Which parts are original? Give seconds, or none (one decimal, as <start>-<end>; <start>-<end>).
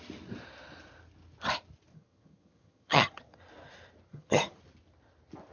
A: 0.0-1.9; 3.4-4.1; 4.6-5.5